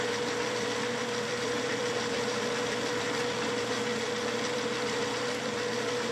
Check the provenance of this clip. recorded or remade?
remade